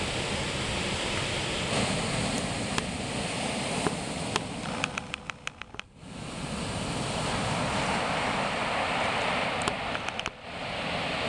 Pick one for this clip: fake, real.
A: real